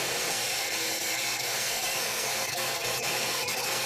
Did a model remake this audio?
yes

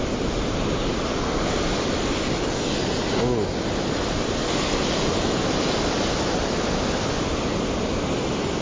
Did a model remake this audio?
no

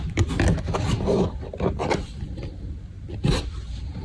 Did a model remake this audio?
no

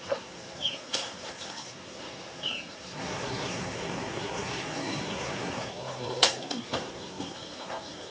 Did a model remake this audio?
yes